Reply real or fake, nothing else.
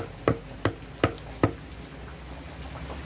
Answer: real